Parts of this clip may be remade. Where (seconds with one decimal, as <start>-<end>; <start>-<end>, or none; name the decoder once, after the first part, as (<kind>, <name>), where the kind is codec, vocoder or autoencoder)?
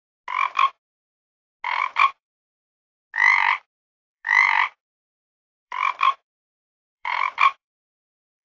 1.8-2.4 (vocoder, BigVGAN v2); 3.9-8.4